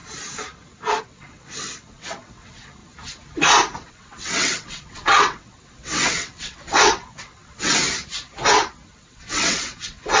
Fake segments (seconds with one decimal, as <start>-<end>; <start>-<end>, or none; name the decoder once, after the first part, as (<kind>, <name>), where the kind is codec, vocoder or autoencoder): 1.0-2.8 (vocoder, WaveNeXt); 3.9-7.8; 9.0-10.2